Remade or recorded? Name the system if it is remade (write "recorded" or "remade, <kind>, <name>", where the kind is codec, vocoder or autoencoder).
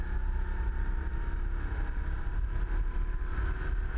recorded